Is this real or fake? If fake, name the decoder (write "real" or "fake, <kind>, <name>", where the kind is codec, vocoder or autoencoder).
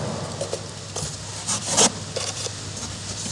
real